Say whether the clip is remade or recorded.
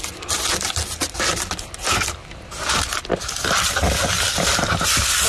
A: recorded